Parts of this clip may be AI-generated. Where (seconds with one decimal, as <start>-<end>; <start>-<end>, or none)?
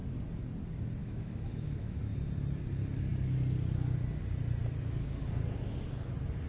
1.0-2.0